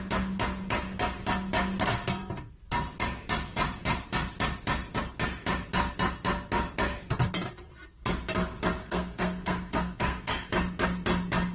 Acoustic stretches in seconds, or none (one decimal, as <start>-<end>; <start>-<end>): 0.0-8.8; 10.5-11.5